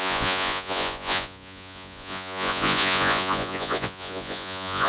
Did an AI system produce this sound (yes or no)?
yes